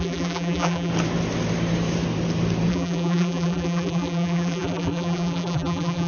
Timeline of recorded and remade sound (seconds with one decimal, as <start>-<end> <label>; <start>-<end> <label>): 0.0-0.9 remade; 0.9-2.7 recorded; 2.7-6.1 remade